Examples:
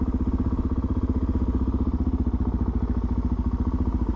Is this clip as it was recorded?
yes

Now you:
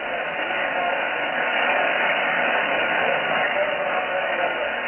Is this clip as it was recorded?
no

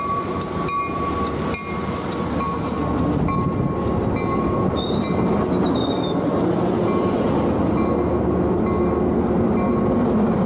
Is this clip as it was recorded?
yes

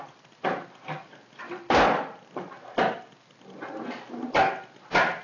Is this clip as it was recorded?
yes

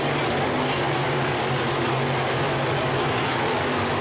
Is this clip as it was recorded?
yes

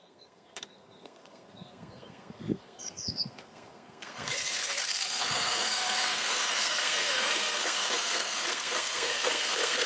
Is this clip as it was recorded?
no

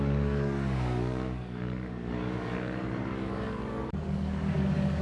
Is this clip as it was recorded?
no